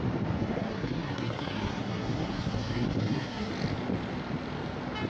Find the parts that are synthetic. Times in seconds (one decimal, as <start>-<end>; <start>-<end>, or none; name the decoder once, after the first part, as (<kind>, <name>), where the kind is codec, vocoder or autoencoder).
0.4-3.5 (codec, SNAC)